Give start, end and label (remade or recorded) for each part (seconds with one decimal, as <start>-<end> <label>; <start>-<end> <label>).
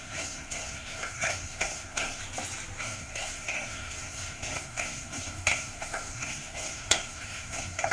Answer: 0.0-2.2 remade; 2.2-2.8 recorded; 2.8-7.9 remade